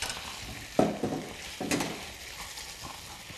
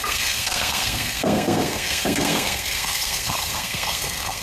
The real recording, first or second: first